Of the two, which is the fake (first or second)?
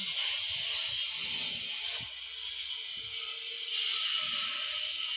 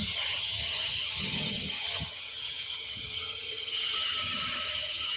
second